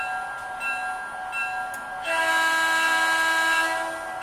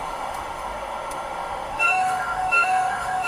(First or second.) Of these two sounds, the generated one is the second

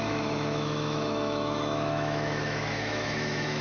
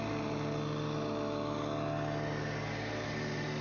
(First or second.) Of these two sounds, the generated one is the first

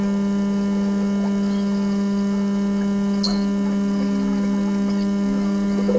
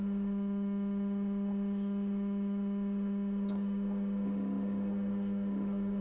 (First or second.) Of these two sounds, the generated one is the second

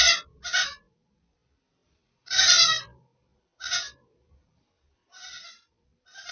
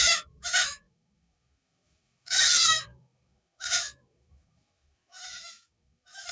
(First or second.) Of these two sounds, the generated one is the second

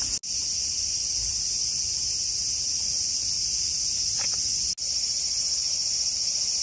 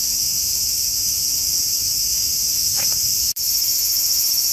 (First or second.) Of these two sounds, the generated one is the second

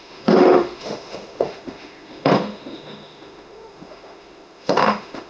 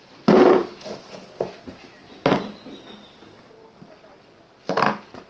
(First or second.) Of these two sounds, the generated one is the first